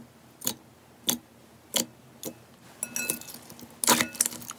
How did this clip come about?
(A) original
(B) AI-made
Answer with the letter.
A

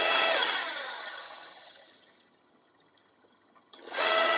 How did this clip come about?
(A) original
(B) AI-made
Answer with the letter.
B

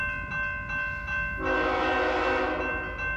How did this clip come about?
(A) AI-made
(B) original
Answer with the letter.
B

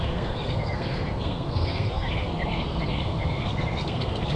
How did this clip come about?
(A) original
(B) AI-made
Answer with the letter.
B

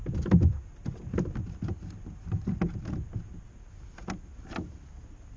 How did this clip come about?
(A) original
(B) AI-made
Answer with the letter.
A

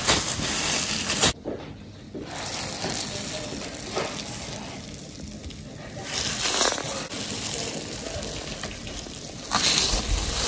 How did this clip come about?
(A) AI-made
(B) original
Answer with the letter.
B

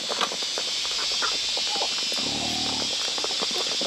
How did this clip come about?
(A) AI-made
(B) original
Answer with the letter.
B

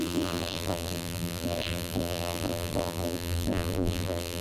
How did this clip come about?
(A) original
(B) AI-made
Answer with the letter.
B